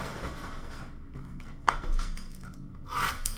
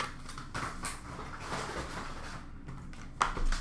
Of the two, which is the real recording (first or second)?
second